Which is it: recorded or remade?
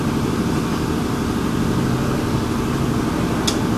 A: recorded